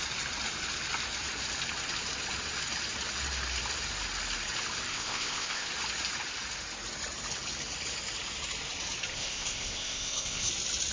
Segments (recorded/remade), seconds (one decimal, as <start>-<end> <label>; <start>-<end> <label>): 0.0-4.9 recorded; 4.9-5.7 remade; 5.7-9.1 recorded; 9.1-10.5 remade; 10.5-10.9 recorded